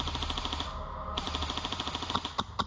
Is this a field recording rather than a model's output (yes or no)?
yes